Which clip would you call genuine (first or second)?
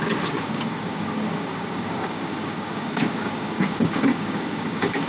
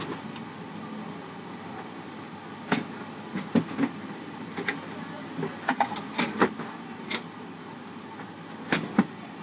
second